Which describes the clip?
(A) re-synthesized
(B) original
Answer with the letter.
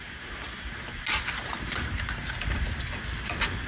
B